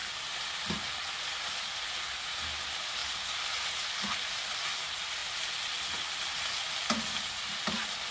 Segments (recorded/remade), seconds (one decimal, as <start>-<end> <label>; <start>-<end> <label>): 0.0-8.1 recorded